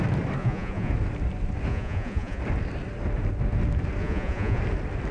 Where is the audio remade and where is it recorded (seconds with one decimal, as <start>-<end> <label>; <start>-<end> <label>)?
0.0-0.4 recorded; 0.4-0.9 remade; 0.9-1.7 recorded; 1.7-2.4 remade; 2.4-4.0 recorded; 4.0-4.6 remade; 4.6-5.1 recorded